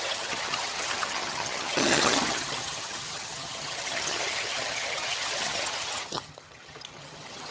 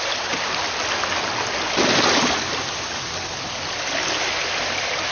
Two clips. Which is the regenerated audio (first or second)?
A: first